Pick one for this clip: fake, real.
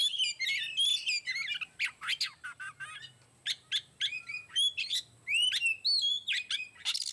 real